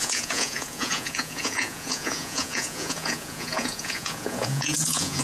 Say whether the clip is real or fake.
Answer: fake